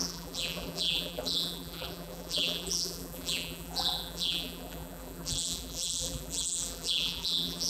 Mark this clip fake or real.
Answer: fake